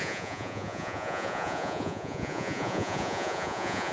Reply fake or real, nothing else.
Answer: fake